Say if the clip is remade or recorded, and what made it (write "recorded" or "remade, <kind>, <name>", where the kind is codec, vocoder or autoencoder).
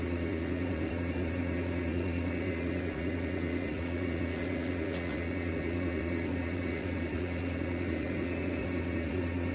remade, vocoder, Vocos